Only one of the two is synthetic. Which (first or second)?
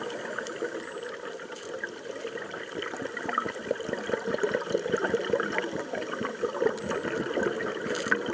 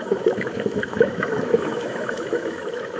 second